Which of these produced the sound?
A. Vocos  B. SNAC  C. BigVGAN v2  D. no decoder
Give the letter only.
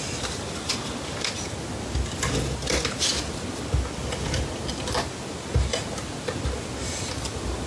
D